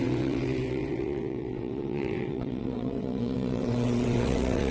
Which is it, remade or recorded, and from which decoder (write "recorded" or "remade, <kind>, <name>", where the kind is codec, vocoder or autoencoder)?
remade, vocoder, WaveNeXt